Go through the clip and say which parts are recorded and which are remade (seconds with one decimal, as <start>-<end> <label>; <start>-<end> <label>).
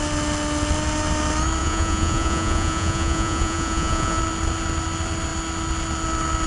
0.0-1.6 recorded; 1.6-4.2 remade; 4.2-6.5 recorded